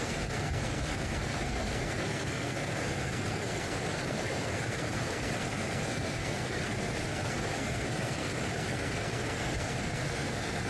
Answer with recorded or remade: remade